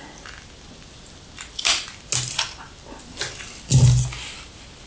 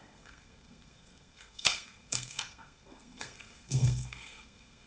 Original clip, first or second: first